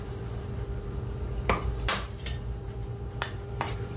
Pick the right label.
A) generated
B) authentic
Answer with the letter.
A